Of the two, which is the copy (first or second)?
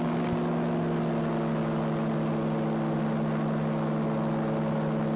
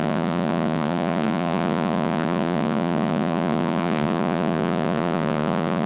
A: second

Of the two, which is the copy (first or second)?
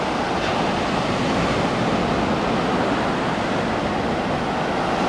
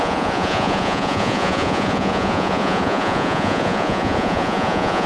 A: second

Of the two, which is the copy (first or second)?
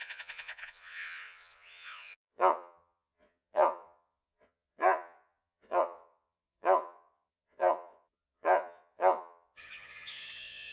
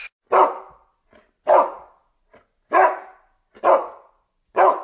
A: first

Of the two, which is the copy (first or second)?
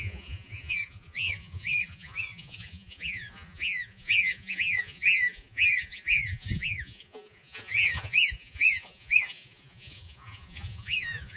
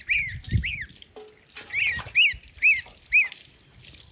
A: first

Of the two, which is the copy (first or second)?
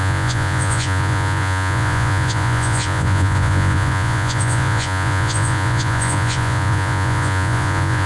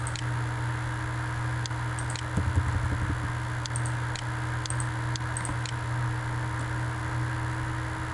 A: first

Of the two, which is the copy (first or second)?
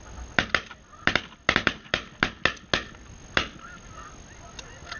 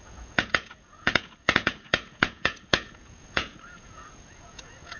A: second